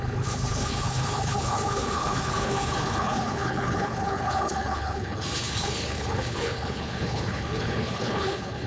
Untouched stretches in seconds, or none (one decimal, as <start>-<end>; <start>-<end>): none